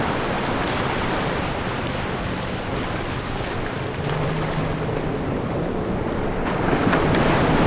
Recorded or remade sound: recorded